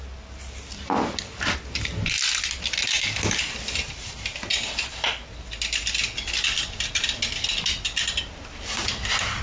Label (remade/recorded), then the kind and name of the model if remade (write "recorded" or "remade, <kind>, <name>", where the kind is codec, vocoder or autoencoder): recorded